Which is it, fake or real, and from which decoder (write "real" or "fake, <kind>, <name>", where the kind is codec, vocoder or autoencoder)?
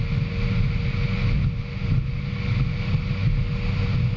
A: real